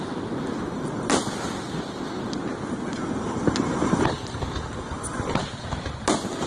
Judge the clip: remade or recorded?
recorded